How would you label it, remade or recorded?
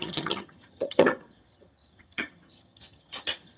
remade